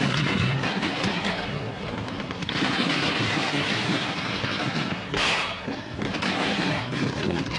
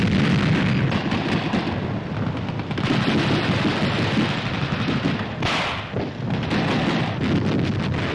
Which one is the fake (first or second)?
first